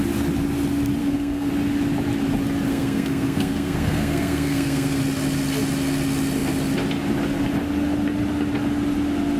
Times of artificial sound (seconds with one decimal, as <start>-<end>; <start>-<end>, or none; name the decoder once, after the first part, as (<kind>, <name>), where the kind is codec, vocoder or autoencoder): 1.0-1.5 (codec, SNAC); 2.7-5.0